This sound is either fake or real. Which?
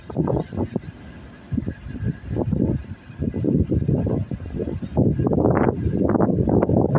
real